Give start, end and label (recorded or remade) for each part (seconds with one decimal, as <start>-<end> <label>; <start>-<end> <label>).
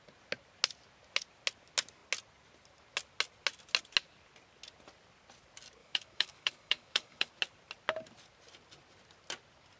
0.0-5.8 recorded; 5.8-7.3 remade; 7.3-9.8 recorded